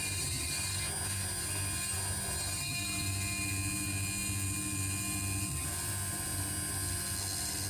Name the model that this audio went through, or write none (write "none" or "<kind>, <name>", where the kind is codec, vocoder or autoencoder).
none